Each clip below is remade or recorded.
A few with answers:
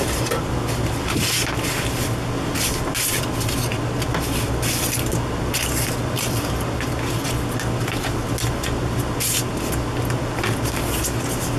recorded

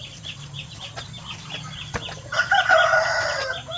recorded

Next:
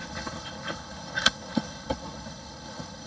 remade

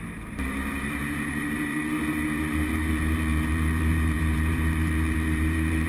remade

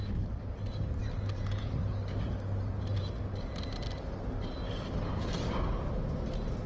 recorded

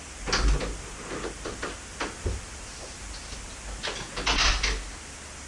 recorded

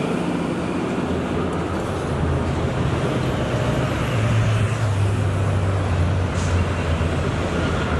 recorded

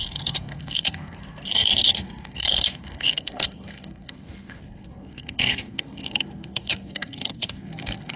remade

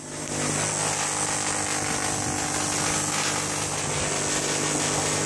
recorded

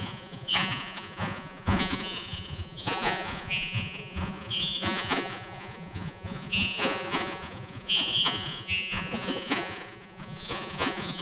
remade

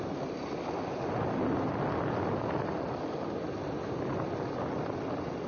recorded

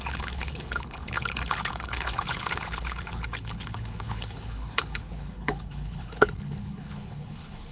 remade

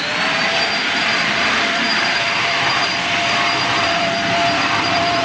remade